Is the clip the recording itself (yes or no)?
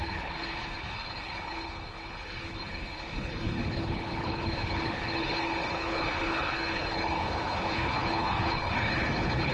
no